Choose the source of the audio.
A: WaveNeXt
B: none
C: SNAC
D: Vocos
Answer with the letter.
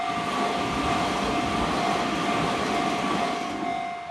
B